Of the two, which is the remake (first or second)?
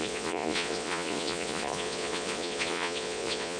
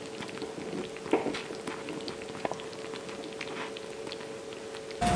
first